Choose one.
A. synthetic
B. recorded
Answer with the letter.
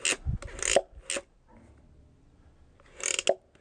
B